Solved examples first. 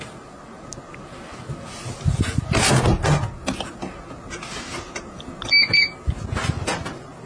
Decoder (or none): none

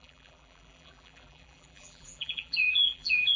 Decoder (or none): vocoder, BigVGAN v2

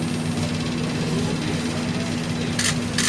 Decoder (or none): none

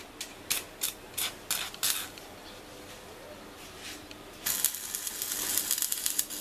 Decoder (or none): none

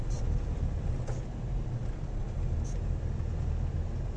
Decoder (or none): none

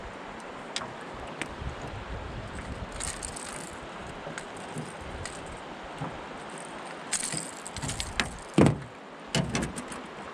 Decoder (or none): none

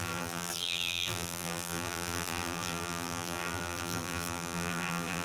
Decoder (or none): vocoder, BigVGAN v2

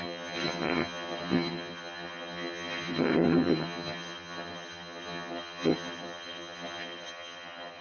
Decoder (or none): vocoder, HiFi-GAN